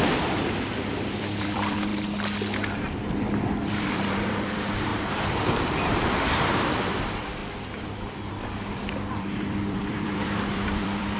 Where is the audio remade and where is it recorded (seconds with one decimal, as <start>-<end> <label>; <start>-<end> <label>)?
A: 0.0-1.9 remade; 1.9-3.6 recorded; 3.6-7.4 remade; 7.4-8.3 recorded; 8.3-11.2 remade